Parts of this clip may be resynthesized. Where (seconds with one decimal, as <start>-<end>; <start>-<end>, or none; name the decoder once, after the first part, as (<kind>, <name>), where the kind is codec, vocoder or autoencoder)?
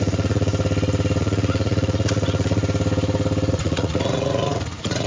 0.0-0.5 (vocoder, Vocos); 1.2-2.6; 3.5-5.1